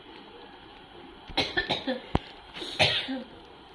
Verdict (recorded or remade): recorded